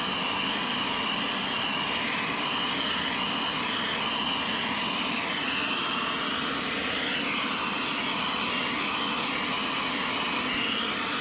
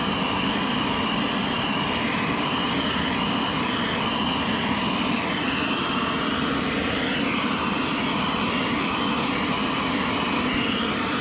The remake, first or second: second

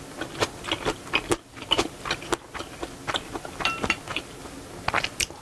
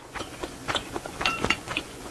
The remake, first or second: second